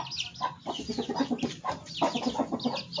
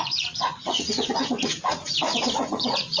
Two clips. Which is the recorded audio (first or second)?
first